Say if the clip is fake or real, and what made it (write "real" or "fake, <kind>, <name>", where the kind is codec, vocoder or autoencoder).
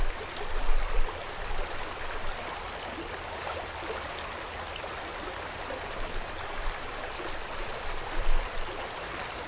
real